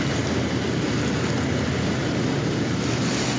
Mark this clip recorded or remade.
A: recorded